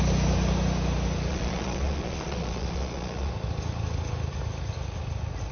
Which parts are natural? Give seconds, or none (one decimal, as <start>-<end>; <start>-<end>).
0.0-1.3; 3.3-5.5